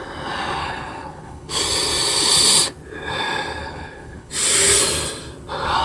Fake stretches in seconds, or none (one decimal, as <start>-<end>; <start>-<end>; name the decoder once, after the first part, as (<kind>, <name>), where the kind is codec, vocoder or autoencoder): 0.6-1.6 (codec, HILCodec); 3.6-4.3